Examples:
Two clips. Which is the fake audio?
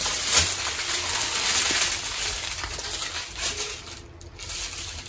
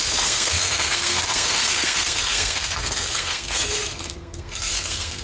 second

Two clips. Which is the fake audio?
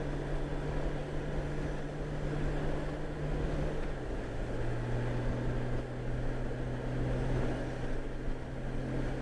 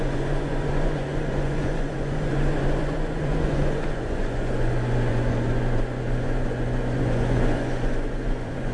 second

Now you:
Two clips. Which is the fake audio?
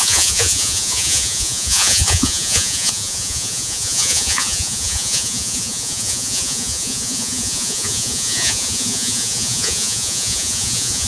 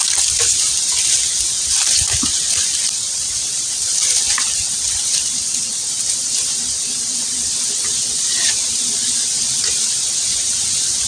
first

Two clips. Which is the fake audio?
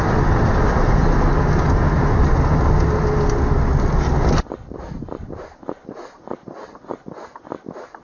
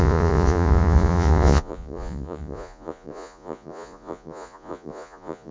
second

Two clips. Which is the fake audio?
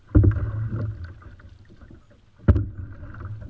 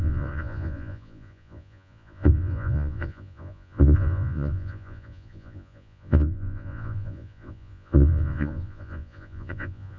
second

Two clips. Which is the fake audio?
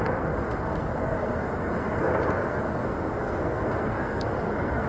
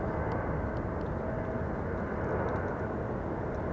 first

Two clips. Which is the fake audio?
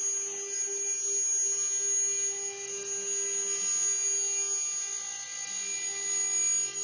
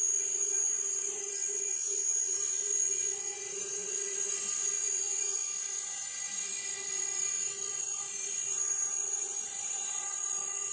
second